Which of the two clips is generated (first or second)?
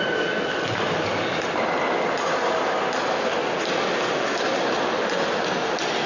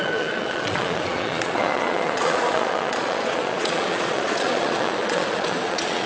second